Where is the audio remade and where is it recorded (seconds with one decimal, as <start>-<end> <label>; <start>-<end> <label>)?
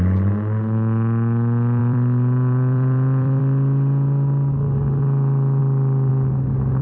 0.0-1.8 recorded; 1.8-3.4 remade; 3.4-5.6 recorded; 5.6-6.1 remade; 6.1-6.8 recorded